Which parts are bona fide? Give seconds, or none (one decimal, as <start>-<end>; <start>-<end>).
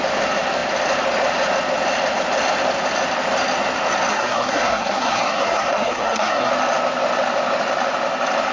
0.0-4.1; 6.5-8.5